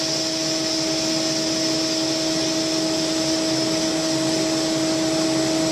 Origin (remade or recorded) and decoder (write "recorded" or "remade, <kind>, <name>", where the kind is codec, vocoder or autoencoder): recorded